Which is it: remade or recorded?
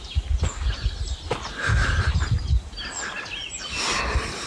recorded